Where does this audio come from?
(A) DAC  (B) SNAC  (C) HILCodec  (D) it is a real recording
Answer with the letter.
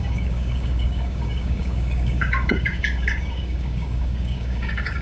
A